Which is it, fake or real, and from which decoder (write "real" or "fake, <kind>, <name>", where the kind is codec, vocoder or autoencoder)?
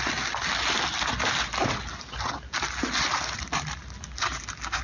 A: real